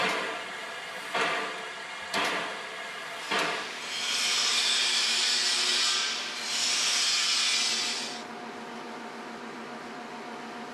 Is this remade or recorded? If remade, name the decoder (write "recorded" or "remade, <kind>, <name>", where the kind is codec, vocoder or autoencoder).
recorded